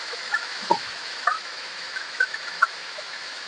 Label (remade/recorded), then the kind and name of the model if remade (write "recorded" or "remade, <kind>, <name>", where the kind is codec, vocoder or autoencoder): remade, autoencoder, DAC-VAE